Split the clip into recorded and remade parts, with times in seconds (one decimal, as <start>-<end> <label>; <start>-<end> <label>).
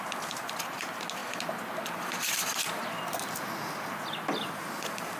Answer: 0.0-5.2 recorded